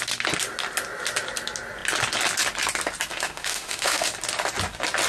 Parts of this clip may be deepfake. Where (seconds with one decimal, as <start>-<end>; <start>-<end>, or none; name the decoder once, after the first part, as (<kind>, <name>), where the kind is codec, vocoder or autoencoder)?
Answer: 3.1-4.1 (autoencoder, DAC-VAE)